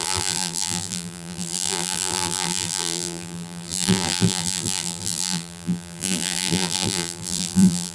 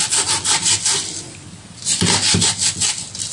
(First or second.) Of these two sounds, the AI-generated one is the first